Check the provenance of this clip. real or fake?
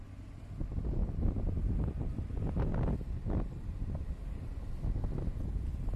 real